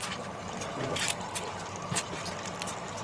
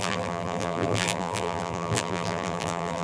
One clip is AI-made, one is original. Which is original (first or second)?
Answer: first